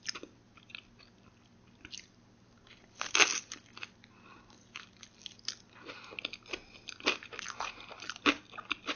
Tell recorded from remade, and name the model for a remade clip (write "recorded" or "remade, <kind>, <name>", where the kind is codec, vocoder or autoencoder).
recorded